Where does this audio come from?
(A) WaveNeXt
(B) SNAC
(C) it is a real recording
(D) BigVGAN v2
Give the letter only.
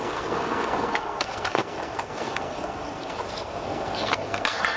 B